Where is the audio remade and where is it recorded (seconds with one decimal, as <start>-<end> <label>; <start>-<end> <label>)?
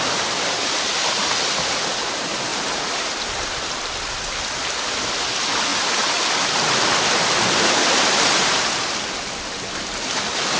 0.0-2.5 recorded; 2.5-3.6 remade; 3.6-10.6 recorded